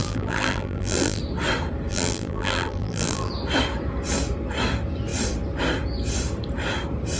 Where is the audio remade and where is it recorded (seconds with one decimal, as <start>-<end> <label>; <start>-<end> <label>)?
0.0-1.2 remade; 1.2-1.9 recorded; 1.9-3.3 remade; 3.3-7.2 recorded